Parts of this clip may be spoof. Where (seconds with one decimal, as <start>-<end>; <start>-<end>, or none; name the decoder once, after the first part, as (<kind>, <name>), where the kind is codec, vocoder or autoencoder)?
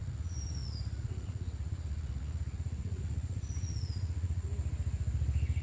0.0-4.5 (vocoder, Vocos)